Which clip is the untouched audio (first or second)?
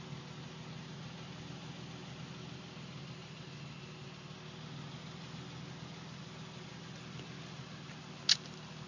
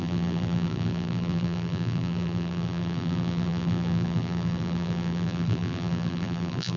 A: first